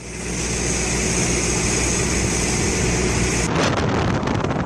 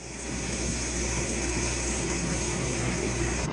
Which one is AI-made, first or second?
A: second